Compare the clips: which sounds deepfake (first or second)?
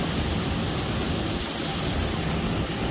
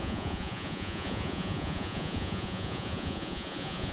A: second